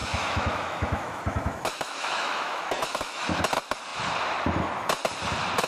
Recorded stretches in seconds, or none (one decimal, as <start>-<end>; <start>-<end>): 3.4-5.7